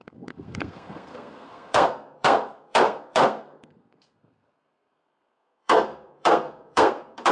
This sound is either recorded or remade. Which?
remade